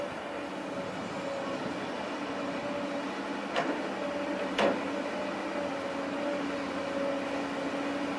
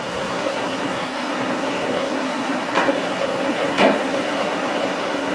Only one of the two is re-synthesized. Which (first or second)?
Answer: second